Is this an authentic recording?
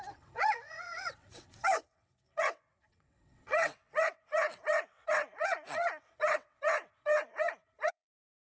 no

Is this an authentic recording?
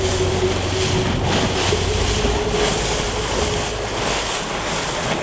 yes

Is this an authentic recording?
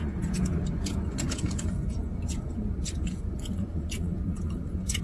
no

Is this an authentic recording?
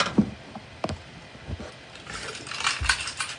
yes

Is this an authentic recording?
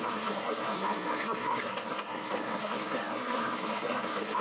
no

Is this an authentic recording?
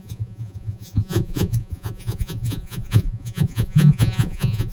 no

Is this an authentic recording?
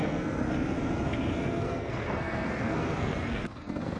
no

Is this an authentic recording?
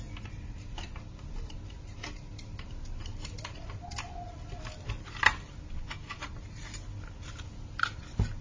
yes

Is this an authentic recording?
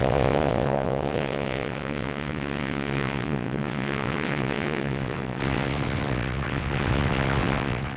no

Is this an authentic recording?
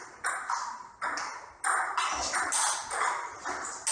yes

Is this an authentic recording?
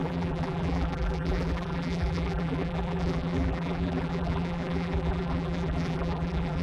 no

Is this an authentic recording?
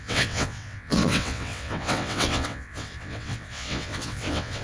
no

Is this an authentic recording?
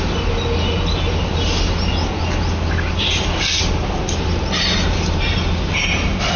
yes